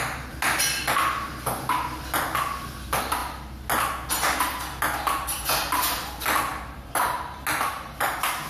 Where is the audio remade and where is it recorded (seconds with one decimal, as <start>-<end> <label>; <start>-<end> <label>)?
0.0-6.5 recorded; 6.5-7.3 remade; 7.3-8.5 recorded